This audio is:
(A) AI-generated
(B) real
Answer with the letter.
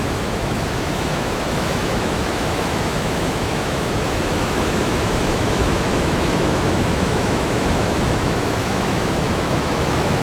A